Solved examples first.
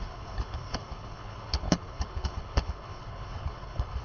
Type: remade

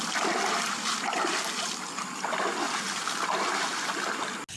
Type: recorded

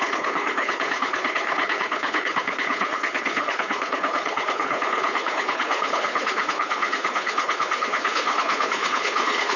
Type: remade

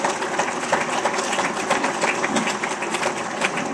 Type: recorded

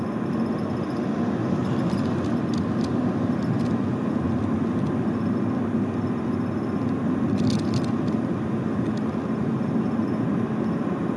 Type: recorded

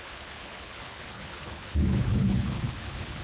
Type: remade